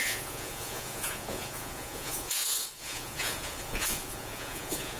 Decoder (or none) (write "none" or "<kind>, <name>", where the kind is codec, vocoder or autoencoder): vocoder, Vocos